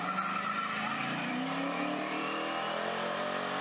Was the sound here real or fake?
fake